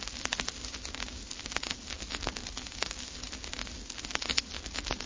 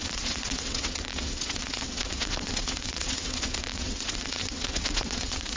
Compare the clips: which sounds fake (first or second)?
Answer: second